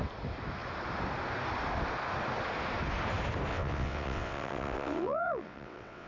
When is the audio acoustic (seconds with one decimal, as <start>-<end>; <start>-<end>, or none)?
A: 0.0-3.5